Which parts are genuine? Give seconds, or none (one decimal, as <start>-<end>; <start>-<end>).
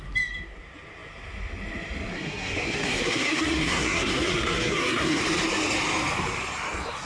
0.0-2.1; 5.2-7.1